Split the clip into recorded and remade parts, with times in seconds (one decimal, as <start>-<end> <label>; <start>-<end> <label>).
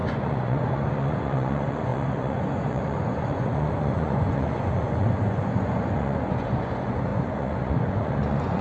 0.0-8.6 remade